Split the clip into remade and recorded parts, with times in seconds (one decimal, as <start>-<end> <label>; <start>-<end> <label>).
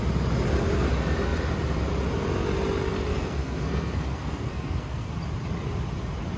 0.0-3.1 recorded; 3.1-5.1 remade; 5.1-6.4 recorded